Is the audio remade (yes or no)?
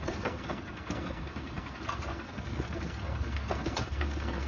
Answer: yes